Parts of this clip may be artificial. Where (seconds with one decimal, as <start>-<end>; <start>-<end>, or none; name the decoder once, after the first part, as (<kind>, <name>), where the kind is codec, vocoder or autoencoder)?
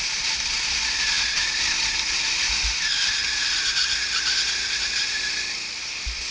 none